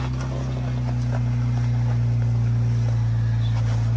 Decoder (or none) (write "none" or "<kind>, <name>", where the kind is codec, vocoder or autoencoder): none